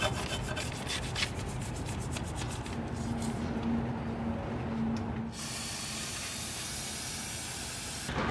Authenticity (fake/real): real